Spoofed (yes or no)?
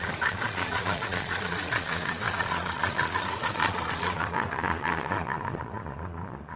yes